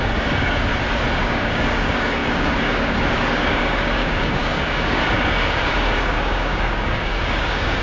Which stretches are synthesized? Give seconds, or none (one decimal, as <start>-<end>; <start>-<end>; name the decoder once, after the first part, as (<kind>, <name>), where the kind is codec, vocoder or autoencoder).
0.0-0.7 (codec, DAC); 1.2-7.8